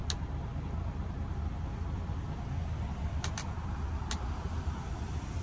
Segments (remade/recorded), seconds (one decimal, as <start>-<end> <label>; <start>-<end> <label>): 0.0-1.3 recorded; 1.3-3.4 remade; 3.4-4.8 recorded; 4.8-5.4 remade